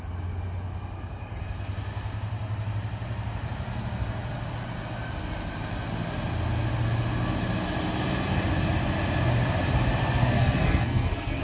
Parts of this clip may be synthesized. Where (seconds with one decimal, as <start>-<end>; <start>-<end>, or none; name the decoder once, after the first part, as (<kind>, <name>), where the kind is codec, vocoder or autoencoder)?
10.0-11.4 (codec, SNAC)